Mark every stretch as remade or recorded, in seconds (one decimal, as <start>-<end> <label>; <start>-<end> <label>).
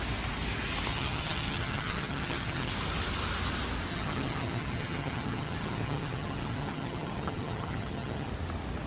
0.0-0.9 recorded; 0.9-2.7 remade; 2.7-3.9 recorded; 3.9-8.3 remade; 8.3-8.9 recorded